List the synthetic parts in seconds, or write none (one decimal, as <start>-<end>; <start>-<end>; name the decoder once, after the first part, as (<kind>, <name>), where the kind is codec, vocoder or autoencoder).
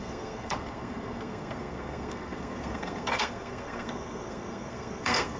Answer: 0.0-5.4 (codec, SNAC)